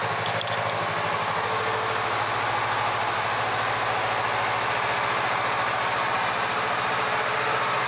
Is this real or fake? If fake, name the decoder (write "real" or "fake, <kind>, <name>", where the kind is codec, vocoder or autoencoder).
real